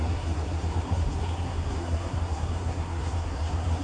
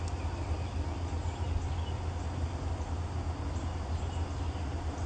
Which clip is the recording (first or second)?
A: second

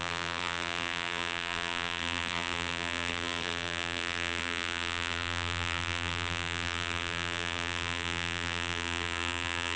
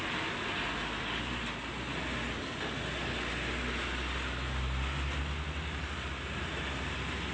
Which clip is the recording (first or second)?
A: second